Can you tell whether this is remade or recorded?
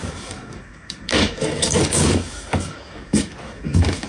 remade